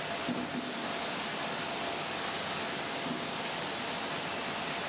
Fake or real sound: real